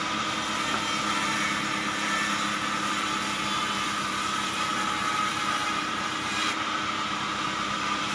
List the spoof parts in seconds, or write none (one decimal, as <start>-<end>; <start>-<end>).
none